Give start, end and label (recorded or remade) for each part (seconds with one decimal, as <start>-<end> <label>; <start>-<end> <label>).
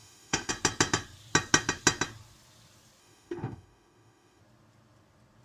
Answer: 0.0-0.5 remade; 0.5-3.0 recorded; 3.0-4.4 remade; 4.4-5.4 recorded